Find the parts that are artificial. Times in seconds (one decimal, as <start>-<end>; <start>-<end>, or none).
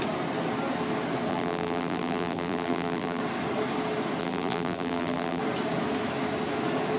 1.3-3.2; 4.2-5.4